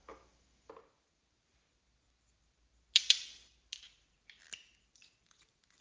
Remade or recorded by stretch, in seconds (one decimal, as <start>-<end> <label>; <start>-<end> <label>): 0.0-0.7 remade; 0.7-5.8 recorded